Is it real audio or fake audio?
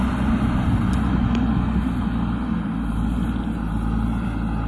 real